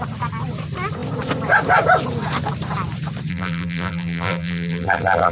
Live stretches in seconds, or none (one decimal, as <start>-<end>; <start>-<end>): 0.0-3.3